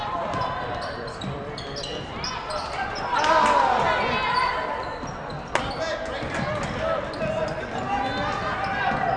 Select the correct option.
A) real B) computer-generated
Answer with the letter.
A